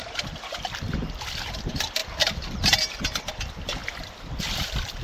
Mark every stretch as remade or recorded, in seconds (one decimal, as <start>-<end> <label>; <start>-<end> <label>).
0.0-1.5 recorded; 1.5-2.0 remade; 2.0-3.3 recorded; 3.3-5.0 remade